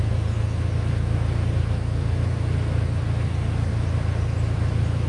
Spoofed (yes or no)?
no